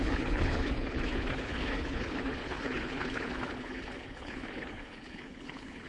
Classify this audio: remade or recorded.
remade